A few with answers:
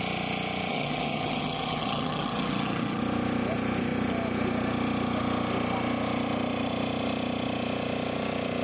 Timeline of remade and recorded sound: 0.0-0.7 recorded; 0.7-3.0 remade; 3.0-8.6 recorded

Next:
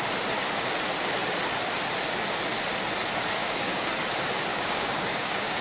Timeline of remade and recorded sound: 0.0-3.4 recorded; 3.4-3.9 remade; 3.9-4.5 recorded; 4.5-5.6 remade

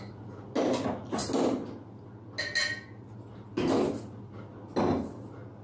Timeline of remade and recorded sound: 0.0-5.6 recorded

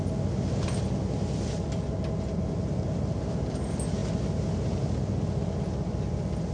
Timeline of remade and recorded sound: 0.0-6.5 recorded

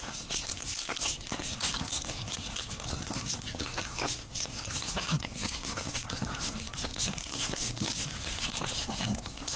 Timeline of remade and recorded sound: 0.0-9.6 remade